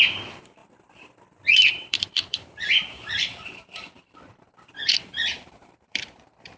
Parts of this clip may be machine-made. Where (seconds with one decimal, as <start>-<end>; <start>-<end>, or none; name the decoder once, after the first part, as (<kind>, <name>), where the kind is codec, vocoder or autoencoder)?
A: 0.0-0.6 (vocoder, BigVGAN v2); 1.7-6.6